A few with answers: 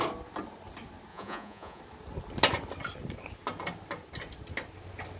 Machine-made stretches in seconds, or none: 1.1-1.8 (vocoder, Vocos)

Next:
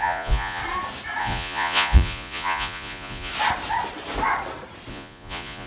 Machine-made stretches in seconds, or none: 0.0-0.6 (vocoder, Vocos); 1.2-3.3; 4.9-5.7

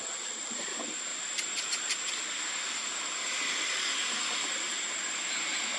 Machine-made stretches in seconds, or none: none

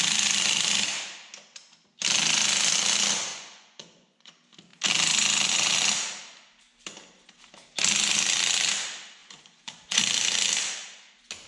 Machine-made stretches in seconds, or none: 3.3-4.3 (vocoder, Vocos); 9.2-10.0

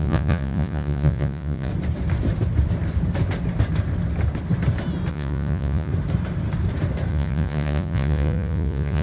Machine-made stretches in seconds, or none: 0.0-1.7 (vocoder, Vocos); 5.1-5.9; 7.1-9.0

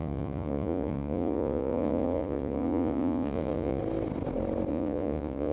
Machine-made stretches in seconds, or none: 0.0-3.8 (vocoder, Vocos); 4.7-5.5

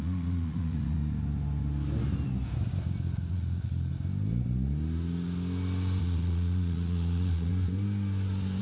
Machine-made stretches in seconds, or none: 0.0-1.0 (vocoder, Vocos); 3.3-3.9; 6.0-7.5